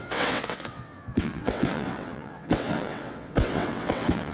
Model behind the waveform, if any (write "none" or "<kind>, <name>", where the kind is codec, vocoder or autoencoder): vocoder, WaveNeXt